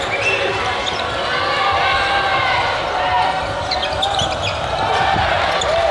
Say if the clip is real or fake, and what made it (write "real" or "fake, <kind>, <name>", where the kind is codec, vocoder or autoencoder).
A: real